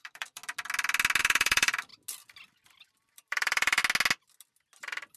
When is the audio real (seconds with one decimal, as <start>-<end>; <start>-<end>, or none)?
0.4-1.2; 1.9-2.5; 3.8-4.8